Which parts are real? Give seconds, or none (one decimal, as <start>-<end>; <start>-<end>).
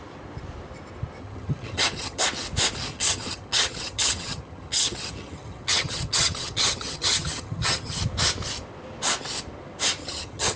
0.0-1.2; 2.2-2.9; 8.0-10.0